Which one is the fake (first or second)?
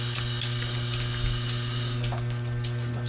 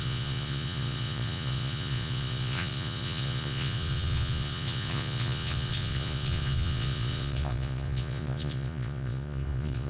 second